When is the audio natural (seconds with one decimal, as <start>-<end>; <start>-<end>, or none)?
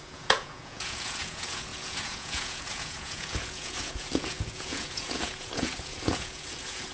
none